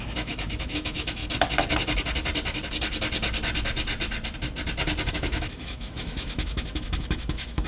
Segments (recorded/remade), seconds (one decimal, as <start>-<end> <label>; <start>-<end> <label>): 0.0-1.2 remade; 1.2-5.1 recorded; 5.1-7.7 remade